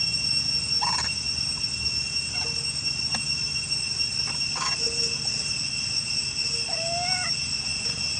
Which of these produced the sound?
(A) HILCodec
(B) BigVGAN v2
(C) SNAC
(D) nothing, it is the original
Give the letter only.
D